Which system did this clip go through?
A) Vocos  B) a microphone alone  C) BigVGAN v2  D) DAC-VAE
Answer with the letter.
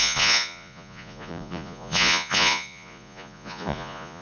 A